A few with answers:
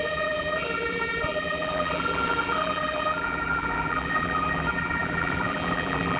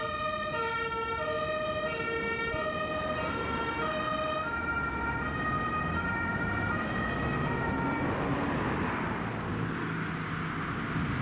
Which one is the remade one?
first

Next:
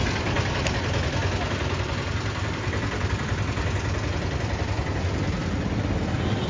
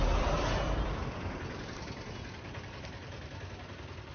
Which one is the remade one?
second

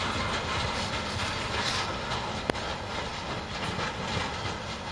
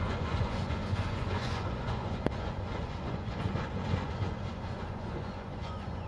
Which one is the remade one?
second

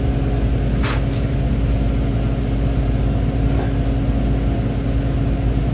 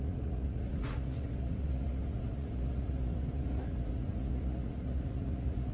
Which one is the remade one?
second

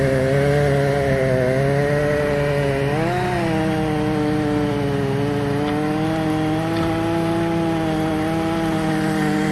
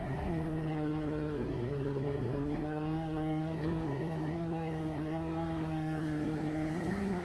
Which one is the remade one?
second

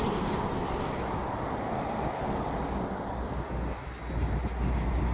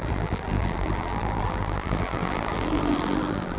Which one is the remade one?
second